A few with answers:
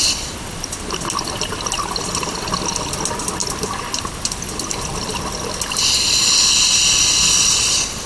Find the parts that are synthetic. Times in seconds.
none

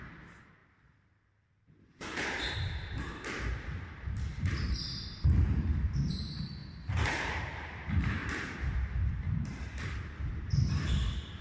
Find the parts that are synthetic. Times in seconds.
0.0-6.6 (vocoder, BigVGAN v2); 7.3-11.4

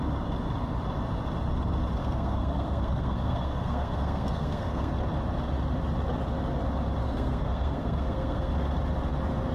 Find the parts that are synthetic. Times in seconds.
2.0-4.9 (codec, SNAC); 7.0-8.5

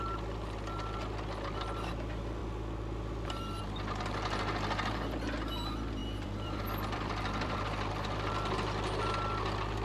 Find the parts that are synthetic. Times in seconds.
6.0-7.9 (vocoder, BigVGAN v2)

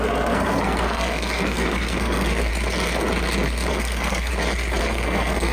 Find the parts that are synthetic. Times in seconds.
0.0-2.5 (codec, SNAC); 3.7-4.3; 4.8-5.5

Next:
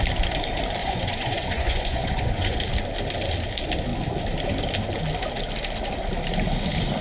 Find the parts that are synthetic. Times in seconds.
0.8-2.6 (vocoder, Vocos)

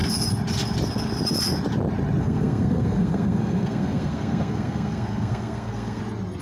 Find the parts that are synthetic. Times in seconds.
2.2-6.0 (codec, SNAC)

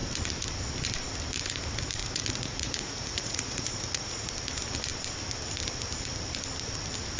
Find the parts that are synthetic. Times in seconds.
2.0-4.3 (vocoder, Vocos)